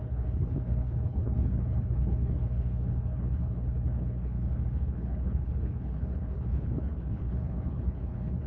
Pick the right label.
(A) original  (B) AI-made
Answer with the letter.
B